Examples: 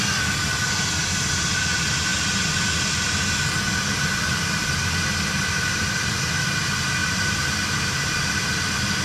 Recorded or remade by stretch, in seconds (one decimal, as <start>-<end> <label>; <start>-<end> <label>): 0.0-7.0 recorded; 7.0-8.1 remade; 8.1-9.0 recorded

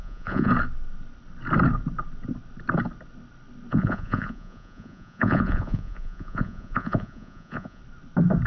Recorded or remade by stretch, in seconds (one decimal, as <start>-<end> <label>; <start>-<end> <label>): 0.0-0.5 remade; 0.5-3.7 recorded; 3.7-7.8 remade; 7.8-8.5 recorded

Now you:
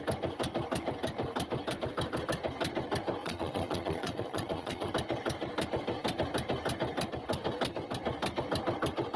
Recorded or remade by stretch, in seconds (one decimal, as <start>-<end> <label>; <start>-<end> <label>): 0.0-3.2 recorded; 3.2-4.9 remade; 4.9-9.2 recorded